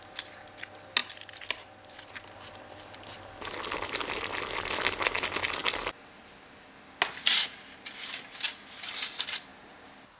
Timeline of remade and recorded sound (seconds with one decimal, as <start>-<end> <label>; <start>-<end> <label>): 0.0-1.0 recorded; 1.0-2.3 remade; 2.3-3.1 recorded; 3.1-4.7 remade; 4.7-10.2 recorded